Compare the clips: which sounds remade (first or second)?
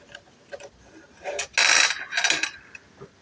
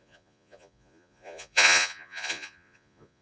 second